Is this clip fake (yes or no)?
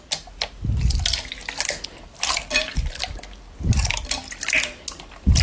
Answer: no